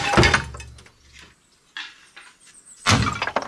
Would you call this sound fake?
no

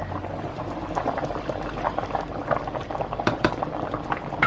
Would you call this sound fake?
yes